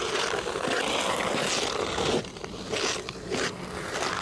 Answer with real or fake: real